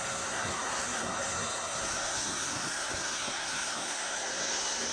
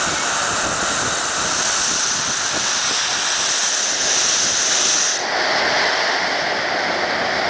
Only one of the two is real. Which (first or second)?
second